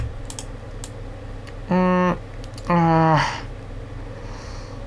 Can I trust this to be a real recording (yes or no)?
yes